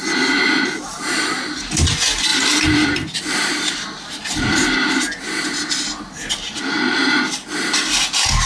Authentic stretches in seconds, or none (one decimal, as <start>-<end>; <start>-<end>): 0.0-8.5